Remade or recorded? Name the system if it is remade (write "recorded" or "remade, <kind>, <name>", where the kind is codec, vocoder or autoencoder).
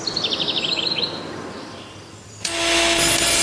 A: recorded